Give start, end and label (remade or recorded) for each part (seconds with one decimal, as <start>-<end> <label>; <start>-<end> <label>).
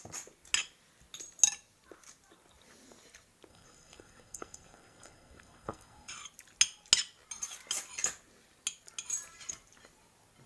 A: 0.0-3.5 recorded; 3.5-6.1 remade; 6.1-10.5 recorded